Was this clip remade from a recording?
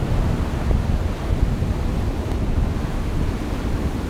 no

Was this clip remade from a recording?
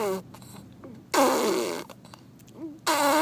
no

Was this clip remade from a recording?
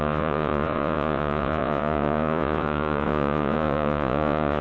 yes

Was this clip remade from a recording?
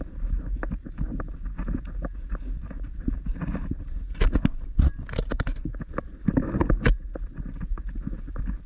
no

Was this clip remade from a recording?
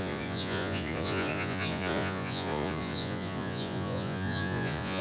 yes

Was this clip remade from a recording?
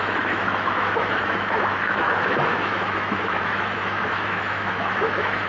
yes